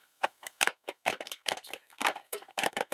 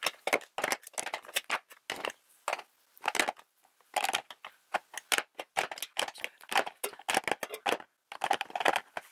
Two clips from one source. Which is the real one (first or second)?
second